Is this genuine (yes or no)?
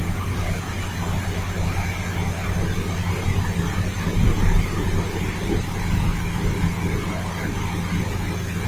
yes